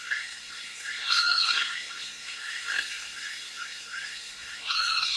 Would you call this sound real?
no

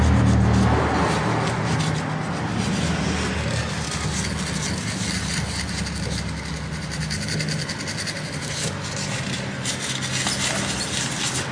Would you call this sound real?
yes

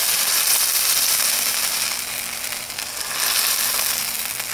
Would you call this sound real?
yes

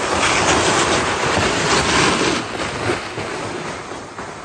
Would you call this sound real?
yes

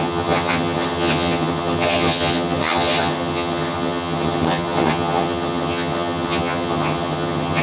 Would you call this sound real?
no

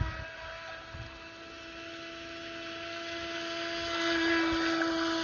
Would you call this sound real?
yes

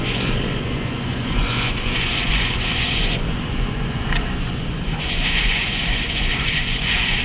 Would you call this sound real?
no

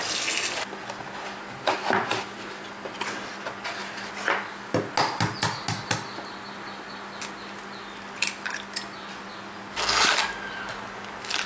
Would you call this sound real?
yes